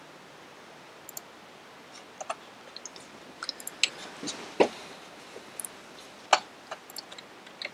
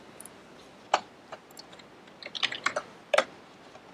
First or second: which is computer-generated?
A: second